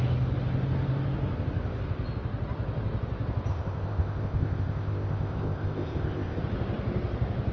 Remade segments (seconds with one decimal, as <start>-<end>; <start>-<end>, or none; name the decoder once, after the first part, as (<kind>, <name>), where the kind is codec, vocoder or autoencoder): 3.5-6.4 (codec, ZipCodec)